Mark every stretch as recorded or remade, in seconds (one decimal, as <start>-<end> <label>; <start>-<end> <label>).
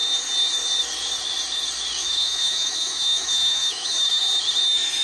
0.0-2.0 recorded; 2.0-4.2 remade; 4.2-5.0 recorded